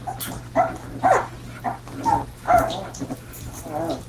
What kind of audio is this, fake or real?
real